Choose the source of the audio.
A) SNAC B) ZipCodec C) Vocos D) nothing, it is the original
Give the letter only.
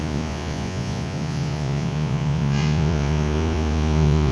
C